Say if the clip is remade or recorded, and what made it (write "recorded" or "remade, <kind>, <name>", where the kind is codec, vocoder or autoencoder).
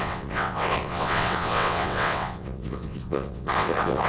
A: remade, vocoder, WaveNeXt